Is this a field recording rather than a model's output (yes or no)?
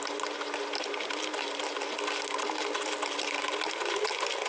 yes